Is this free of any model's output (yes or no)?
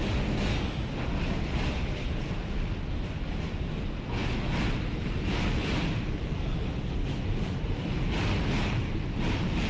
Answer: yes